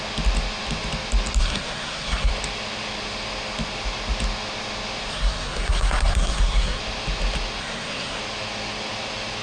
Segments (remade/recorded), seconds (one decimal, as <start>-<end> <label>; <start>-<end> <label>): 0.0-1.4 recorded; 1.4-2.3 remade; 2.3-5.1 recorded; 5.1-6.8 remade; 6.8-7.6 recorded; 7.6-8.2 remade; 8.2-9.4 recorded